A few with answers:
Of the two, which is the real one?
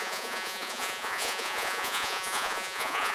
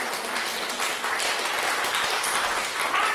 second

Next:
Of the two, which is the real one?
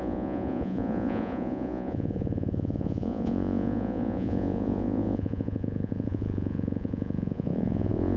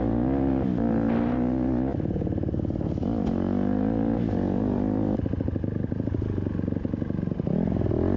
second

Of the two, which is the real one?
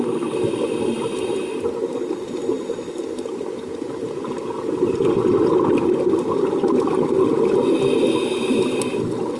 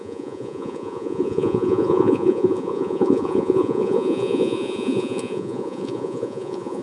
first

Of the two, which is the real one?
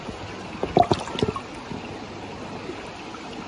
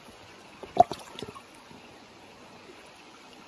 first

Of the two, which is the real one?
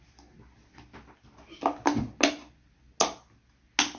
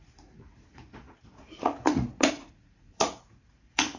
first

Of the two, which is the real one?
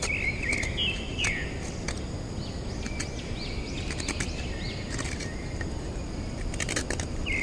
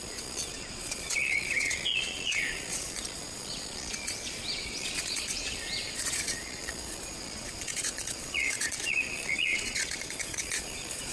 first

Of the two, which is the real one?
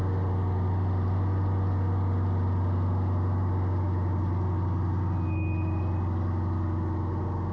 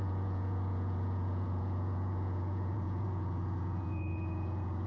first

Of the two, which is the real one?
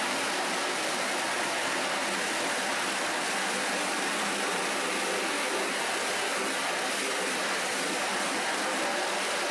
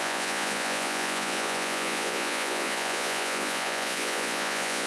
first